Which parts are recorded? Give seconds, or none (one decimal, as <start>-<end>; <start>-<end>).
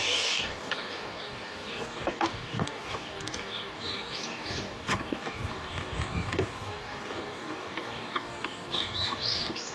none